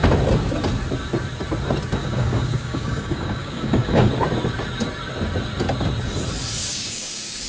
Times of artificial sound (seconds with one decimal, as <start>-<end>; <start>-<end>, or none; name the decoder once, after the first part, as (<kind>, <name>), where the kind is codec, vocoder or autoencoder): 2.0-4.1 (codec, DAC); 6.6-7.5